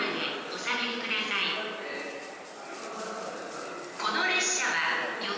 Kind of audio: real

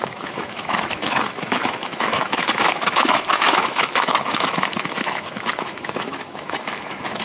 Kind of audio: fake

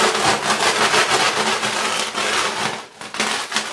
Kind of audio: real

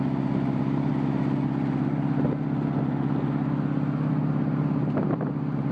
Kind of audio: real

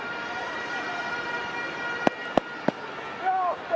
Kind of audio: real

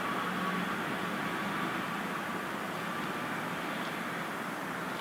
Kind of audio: real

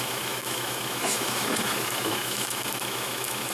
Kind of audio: fake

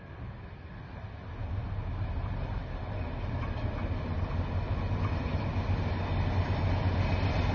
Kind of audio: real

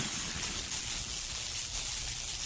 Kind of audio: real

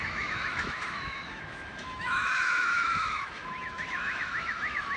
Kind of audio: fake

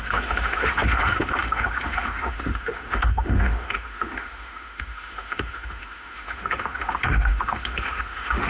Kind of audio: fake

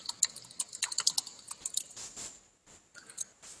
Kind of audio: real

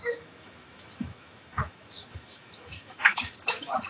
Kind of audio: fake